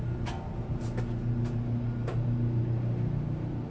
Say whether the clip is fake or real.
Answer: real